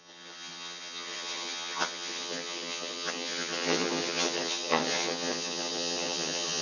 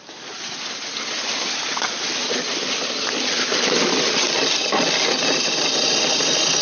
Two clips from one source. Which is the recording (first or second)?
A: second